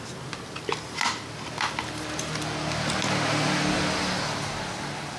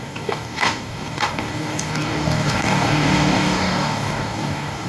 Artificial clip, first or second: second